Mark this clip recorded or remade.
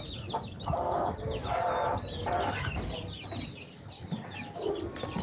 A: recorded